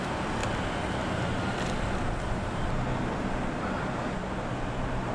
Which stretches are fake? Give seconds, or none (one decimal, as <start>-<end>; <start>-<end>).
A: none